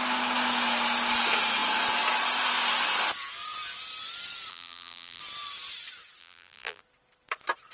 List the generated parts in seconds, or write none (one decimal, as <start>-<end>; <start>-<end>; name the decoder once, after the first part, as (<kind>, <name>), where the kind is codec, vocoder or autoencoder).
4.5-5.2 (vocoder, BigVGAN v2); 6.2-6.8